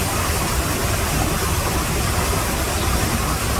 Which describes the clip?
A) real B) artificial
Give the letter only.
A